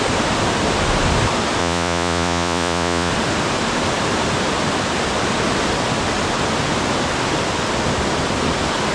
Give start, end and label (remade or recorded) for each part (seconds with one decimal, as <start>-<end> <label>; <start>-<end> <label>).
0.0-1.6 recorded; 1.6-3.1 remade; 3.1-8.9 recorded